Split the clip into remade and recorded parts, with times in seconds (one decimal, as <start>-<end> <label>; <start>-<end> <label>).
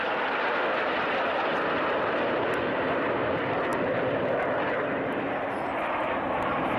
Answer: 0.0-3.7 recorded; 3.7-4.3 remade; 4.3-6.8 recorded